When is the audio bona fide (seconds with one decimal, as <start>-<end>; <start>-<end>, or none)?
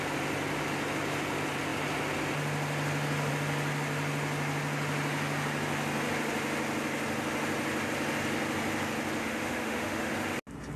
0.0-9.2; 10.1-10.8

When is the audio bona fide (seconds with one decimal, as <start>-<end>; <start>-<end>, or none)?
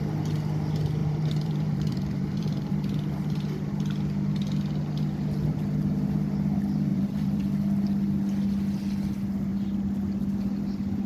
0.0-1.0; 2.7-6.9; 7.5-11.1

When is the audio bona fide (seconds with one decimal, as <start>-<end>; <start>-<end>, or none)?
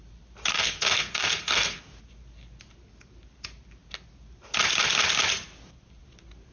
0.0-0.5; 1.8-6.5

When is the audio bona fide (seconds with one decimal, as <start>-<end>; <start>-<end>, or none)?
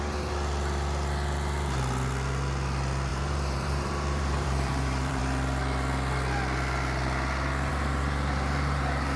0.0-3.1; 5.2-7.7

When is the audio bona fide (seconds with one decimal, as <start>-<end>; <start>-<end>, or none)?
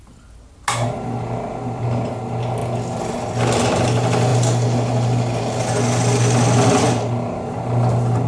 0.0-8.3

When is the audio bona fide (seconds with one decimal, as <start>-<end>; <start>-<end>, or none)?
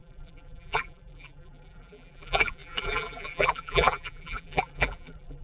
none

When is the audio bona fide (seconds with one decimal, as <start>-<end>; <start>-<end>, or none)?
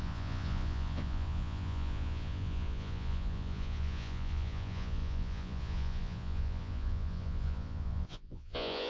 none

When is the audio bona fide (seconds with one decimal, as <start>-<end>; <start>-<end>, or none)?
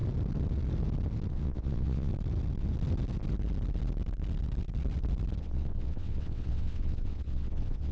0.0-1.3; 2.1-5.4